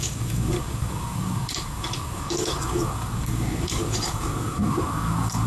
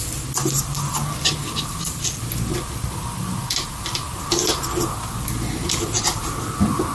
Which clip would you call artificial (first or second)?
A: first